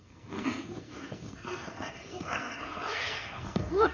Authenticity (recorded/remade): remade